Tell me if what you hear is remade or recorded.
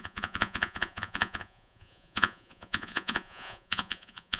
remade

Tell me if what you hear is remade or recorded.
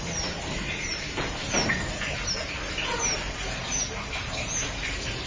recorded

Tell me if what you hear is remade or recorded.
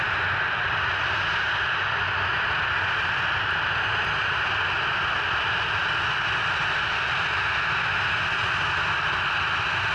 recorded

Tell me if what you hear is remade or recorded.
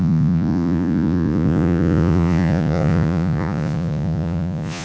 remade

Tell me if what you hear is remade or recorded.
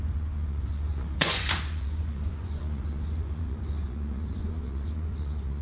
remade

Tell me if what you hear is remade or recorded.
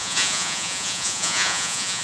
remade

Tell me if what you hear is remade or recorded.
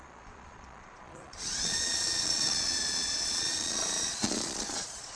remade